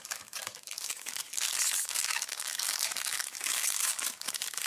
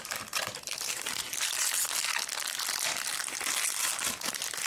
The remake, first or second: first